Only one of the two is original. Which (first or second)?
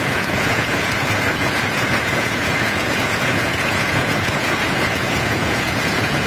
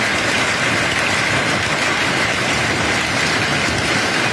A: second